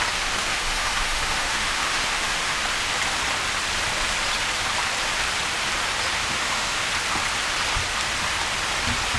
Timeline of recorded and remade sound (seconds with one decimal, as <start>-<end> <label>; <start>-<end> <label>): 0.0-0.5 recorded; 0.5-2.6 remade; 2.6-6.3 recorded; 6.3-6.9 remade; 6.9-9.2 recorded